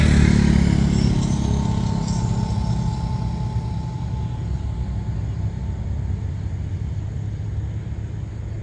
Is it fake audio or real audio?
real